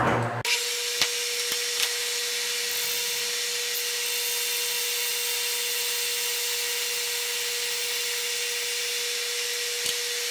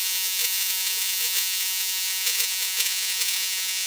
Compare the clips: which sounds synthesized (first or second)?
second